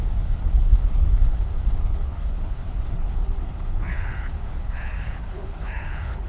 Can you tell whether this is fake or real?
fake